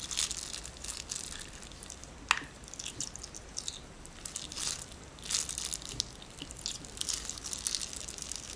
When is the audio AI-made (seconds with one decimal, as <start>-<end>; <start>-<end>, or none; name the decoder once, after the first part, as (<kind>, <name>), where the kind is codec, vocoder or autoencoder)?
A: none